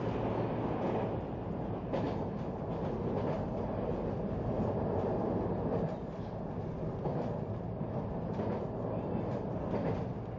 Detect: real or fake real